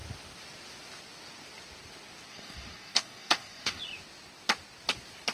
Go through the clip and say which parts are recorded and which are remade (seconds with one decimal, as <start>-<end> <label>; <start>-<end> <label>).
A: 0.0-2.3 recorded; 2.3-3.8 remade; 3.8-5.3 recorded